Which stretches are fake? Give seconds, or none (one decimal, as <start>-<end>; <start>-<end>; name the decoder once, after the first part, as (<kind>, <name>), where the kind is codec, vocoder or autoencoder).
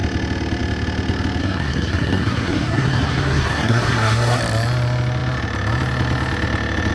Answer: 1.4-4.4 (codec, SNAC)